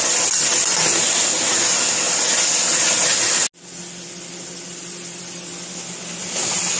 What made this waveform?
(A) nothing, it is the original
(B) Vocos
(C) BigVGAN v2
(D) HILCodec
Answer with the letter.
A